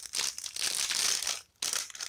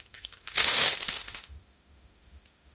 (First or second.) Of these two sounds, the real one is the first